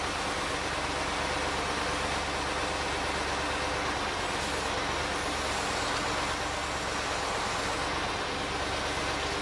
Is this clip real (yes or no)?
yes